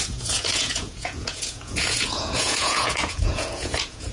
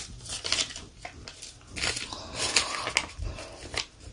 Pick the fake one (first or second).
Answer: first